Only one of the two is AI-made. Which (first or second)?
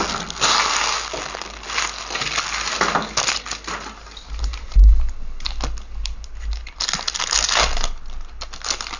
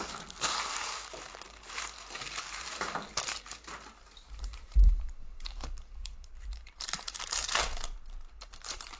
second